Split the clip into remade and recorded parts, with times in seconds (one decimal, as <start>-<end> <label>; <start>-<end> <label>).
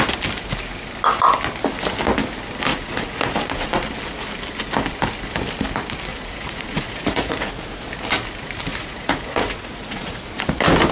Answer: 0.0-2.7 recorded; 2.7-3.3 remade; 3.3-6.1 recorded; 6.1-7.5 remade; 7.5-8.7 recorded; 8.7-10.2 remade; 10.2-10.9 recorded